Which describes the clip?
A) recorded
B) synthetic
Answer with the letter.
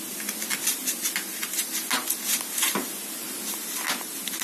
A